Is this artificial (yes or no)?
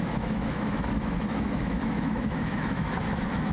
yes